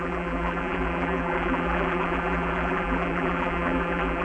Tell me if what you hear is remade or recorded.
remade